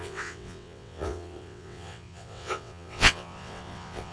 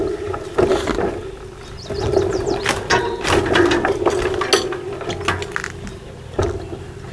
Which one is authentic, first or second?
second